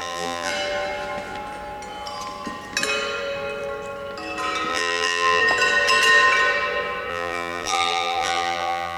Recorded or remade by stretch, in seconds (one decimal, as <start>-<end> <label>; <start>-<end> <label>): 0.0-0.5 remade; 0.5-4.7 recorded; 4.7-5.4 remade; 5.4-7.1 recorded; 7.1-9.0 remade